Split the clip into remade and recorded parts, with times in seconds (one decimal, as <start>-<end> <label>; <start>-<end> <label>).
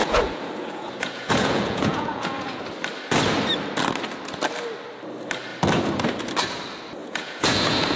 0.0-2.6 remade; 2.6-7.0 recorded; 7.0-8.0 remade